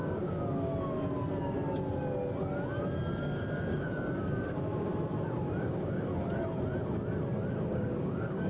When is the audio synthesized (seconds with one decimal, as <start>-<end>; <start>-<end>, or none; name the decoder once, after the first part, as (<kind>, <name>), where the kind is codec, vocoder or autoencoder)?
0.0-0.7 (codec, DAC); 3.2-4.9; 5.6-6.1; 7.7-8.5